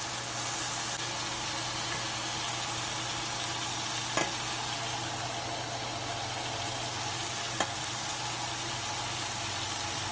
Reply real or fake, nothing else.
real